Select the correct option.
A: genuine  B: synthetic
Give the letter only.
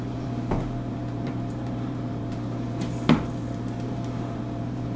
B